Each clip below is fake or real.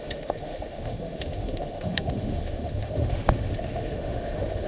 fake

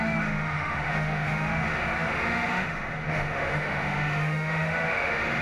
fake